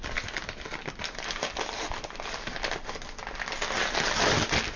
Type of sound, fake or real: real